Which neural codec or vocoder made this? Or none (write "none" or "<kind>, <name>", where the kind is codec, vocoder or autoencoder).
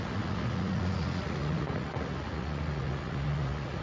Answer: vocoder, Vocos